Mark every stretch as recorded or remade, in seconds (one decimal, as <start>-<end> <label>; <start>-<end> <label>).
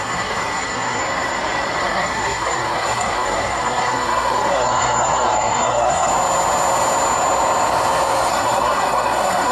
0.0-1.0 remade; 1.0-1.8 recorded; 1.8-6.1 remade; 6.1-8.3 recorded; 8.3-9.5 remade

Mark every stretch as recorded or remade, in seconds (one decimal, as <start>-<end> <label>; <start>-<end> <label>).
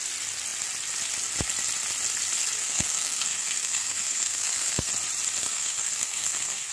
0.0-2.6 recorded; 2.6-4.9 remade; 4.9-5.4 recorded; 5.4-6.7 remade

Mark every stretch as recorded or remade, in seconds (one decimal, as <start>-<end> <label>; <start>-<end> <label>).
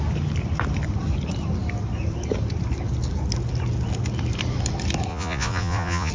0.0-5.1 recorded; 5.1-6.1 remade